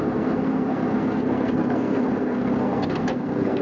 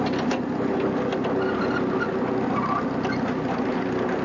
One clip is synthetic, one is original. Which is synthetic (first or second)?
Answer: first